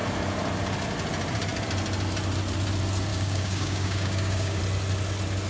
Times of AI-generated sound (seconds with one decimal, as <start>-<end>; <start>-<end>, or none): 3.1-4.6